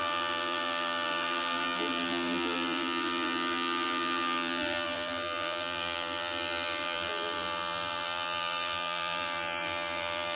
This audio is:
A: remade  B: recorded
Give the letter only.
A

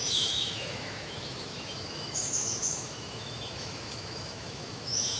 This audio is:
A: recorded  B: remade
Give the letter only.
B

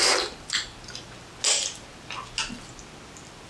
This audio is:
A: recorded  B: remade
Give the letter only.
A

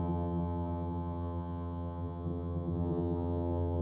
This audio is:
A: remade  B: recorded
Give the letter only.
A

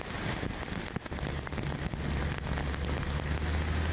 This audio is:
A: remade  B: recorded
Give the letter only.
B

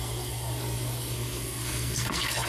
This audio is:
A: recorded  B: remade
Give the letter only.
B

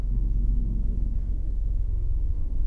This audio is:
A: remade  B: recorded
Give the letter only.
A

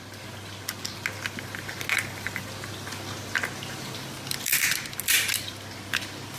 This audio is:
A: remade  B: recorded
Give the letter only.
B